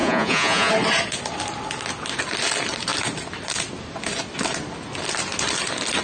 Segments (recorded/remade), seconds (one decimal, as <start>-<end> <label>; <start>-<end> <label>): 0.0-0.7 remade; 0.7-6.0 recorded